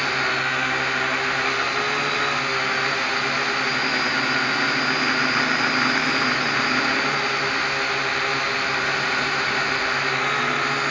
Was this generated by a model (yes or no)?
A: no